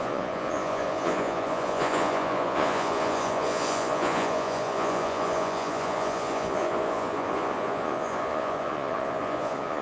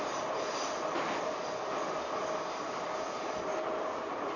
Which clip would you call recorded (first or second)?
second